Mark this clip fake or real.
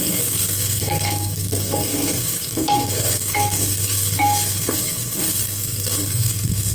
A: fake